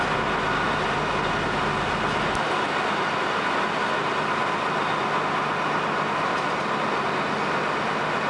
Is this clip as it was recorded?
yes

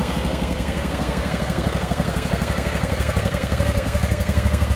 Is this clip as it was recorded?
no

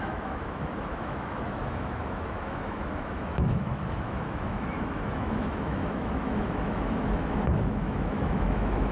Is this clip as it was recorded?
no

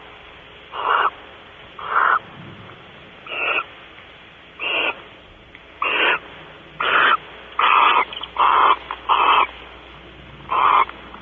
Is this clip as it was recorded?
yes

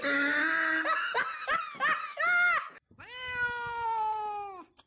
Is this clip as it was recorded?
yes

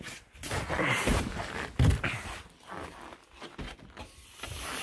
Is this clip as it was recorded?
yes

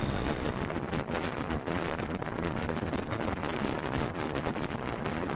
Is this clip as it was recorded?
no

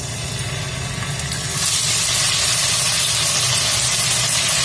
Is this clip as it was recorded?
yes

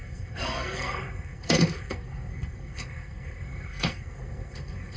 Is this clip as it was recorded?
no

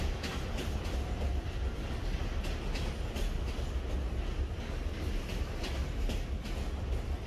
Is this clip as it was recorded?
yes